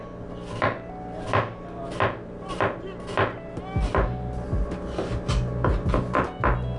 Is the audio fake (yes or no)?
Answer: no